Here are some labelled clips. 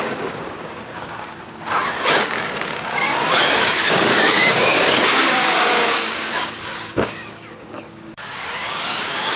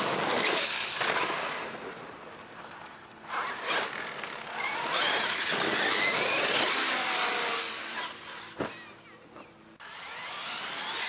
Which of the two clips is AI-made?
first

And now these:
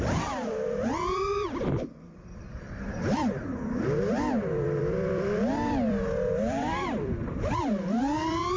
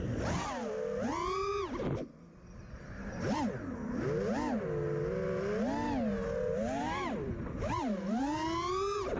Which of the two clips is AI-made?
first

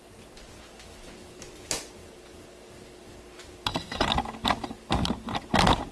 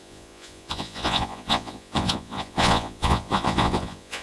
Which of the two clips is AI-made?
second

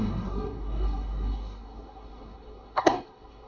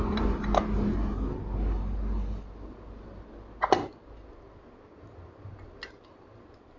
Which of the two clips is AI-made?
first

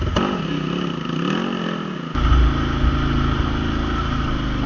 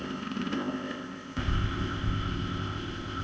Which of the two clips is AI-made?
second